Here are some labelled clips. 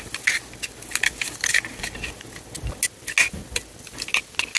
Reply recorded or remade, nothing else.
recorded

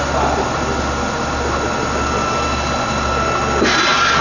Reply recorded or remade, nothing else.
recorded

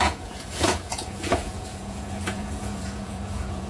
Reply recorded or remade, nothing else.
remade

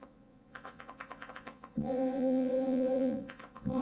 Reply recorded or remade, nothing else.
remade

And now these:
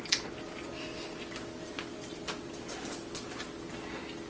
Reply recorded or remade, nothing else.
recorded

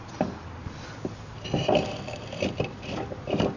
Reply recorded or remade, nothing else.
recorded